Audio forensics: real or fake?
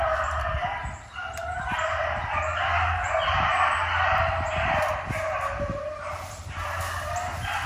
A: real